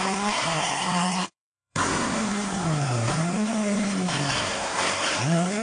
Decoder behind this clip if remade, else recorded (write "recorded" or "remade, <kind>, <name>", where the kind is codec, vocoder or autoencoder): remade, codec, SNAC